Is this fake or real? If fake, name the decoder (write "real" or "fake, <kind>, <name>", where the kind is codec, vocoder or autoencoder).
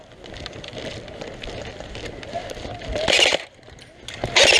real